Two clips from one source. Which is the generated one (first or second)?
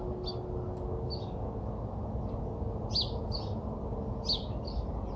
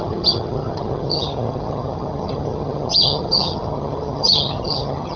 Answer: second